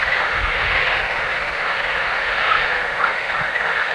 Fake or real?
fake